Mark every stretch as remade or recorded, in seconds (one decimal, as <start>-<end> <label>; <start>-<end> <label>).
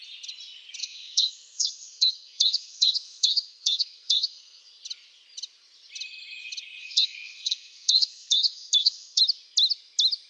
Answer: 0.0-0.8 recorded; 0.8-4.6 remade; 4.6-6.8 recorded; 6.8-9.2 remade; 9.2-10.3 recorded